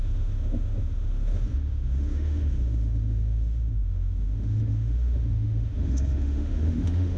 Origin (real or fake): fake